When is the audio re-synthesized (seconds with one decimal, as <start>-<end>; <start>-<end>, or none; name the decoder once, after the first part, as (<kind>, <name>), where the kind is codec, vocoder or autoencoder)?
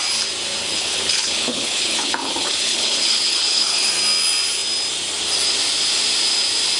0.6-3.9 (codec, HILCodec)